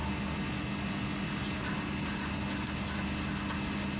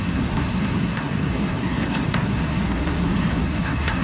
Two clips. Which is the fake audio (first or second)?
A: second